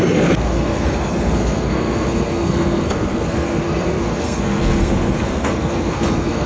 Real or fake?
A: fake